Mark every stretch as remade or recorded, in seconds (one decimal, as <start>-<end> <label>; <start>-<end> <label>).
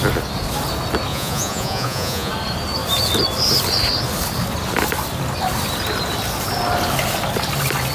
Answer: 0.0-1.1 recorded; 1.1-2.3 remade; 2.3-7.9 recorded